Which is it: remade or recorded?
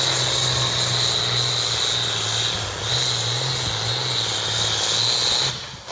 recorded